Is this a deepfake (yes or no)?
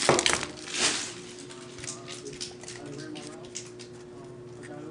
no